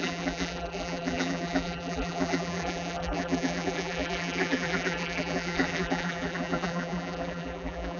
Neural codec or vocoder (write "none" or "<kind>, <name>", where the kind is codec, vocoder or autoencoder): vocoder, BigVGAN v2